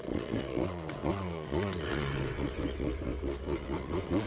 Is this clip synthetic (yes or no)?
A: yes